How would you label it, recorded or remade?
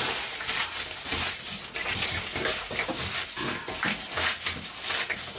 recorded